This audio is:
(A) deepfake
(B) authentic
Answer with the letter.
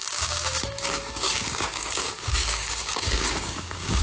A